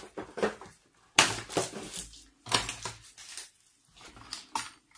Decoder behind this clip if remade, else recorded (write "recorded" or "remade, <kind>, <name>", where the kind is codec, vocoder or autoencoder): recorded